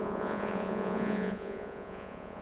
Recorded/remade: remade